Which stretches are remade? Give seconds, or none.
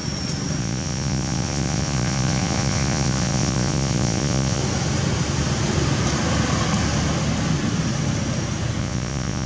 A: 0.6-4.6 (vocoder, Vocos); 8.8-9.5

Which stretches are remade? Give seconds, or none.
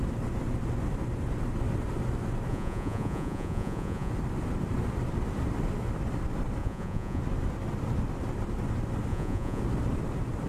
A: 2.5-4.1 (vocoder, Vocos); 6.6-7.2; 9.1-9.6